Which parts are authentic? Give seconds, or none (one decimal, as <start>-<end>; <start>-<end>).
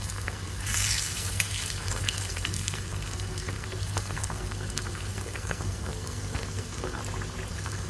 7.0-7.5